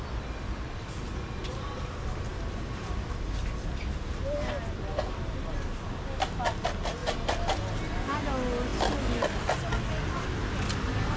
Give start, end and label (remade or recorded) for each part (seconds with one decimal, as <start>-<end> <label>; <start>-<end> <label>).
0.0-11.2 recorded